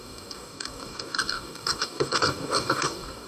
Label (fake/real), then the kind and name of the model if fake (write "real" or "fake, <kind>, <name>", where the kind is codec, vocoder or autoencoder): fake, codec, DAC